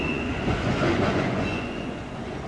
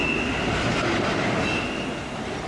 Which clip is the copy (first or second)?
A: first